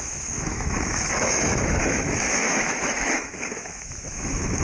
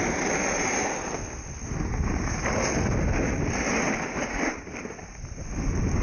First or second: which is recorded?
second